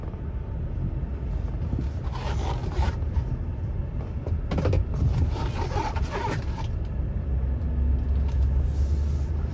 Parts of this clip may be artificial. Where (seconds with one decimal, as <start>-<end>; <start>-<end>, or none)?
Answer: 2.6-7.3